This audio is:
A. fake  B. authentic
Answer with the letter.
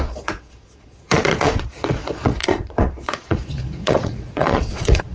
A